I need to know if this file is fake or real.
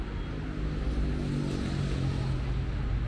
real